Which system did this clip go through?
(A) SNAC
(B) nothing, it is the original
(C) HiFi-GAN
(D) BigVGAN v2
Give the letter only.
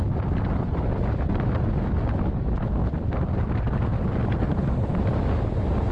B